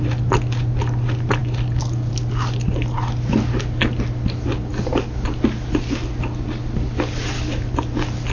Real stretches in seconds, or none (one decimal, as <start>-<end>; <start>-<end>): 0.0-8.3